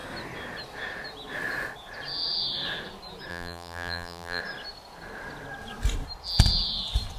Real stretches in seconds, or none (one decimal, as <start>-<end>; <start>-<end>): 0.0-3.3; 4.4-7.2